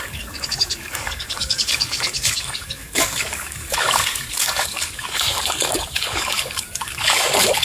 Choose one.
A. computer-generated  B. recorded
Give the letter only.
A